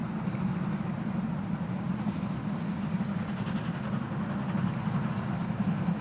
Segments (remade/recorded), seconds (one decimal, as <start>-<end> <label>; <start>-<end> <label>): 0.0-6.0 recorded